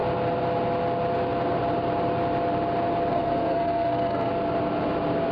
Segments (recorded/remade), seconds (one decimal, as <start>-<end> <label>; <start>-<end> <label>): 0.0-3.1 recorded; 3.1-4.3 remade; 4.3-5.3 recorded

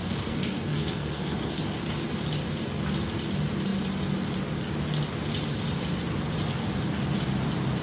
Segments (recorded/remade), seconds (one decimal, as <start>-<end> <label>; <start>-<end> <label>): 0.0-1.6 remade; 1.6-7.8 recorded

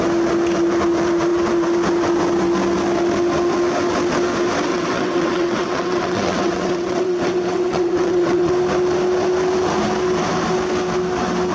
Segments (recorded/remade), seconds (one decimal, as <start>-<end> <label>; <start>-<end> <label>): 0.0-4.7 recorded; 4.7-8.5 remade; 8.5-11.5 recorded